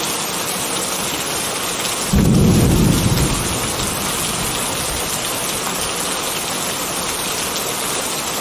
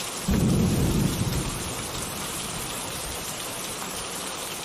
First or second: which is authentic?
first